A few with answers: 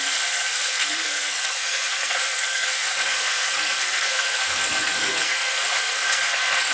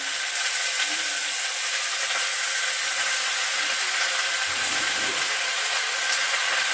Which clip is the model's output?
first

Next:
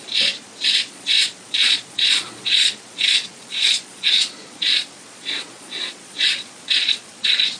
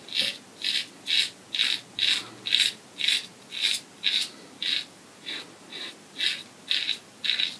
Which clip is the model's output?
first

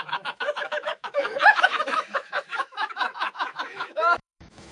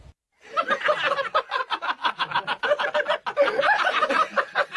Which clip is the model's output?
first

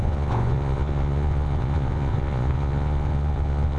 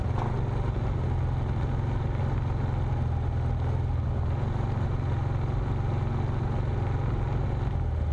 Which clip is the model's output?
first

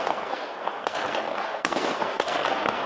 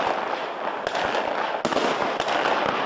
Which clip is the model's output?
first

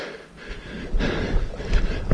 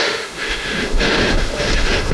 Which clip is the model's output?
second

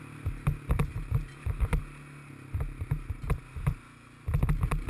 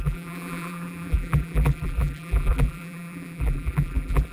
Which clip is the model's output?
second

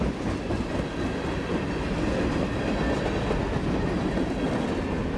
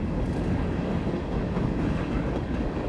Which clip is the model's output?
second